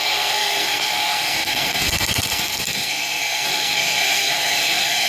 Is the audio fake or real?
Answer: fake